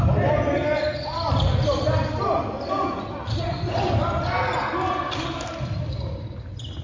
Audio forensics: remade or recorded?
recorded